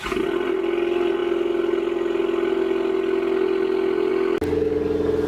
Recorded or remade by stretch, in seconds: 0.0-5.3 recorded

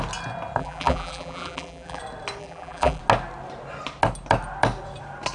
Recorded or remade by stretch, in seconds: 0.0-0.6 recorded; 0.6-2.0 remade; 2.0-2.4 recorded; 2.4-3.0 remade; 3.0-5.3 recorded

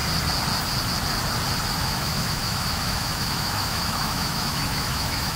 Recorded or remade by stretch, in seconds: 0.0-1.7 recorded; 1.7-5.4 remade